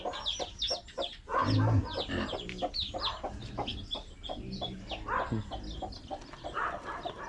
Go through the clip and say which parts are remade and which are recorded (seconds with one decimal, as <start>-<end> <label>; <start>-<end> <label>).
0.0-7.3 recorded